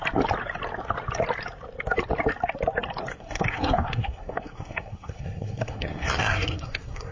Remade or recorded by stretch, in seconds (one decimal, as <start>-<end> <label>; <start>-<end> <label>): 0.0-3.1 recorded; 3.1-7.1 remade